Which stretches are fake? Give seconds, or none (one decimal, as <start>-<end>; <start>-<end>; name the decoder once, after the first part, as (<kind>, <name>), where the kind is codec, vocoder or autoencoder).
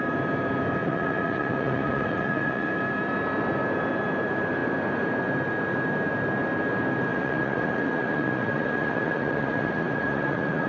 0.8-2.7 (vocoder, Vocos); 7.1-10.7